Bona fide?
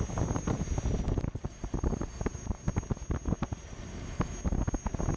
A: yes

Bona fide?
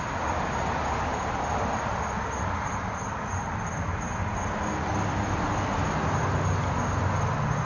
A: yes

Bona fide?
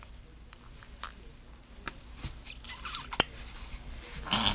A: yes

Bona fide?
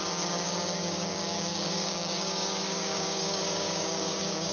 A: no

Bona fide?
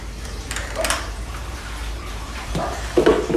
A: no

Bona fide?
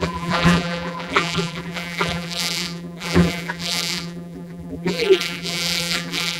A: no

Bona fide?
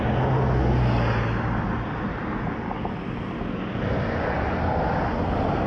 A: yes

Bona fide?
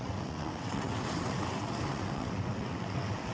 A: no